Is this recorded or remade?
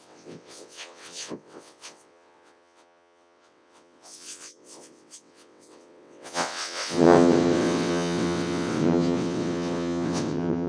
remade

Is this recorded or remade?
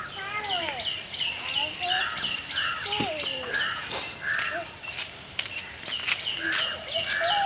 recorded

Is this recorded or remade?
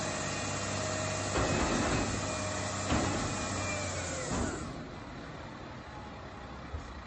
recorded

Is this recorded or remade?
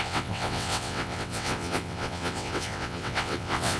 remade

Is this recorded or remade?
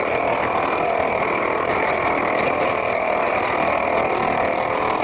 recorded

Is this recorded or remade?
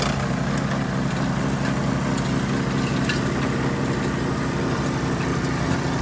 recorded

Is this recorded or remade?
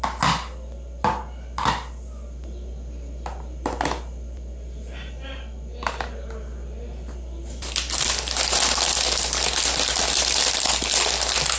recorded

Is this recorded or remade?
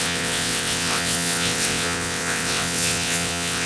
remade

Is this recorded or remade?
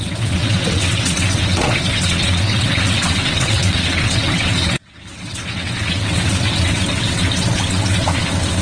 remade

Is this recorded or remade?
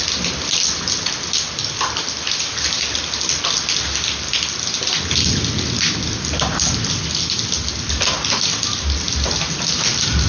recorded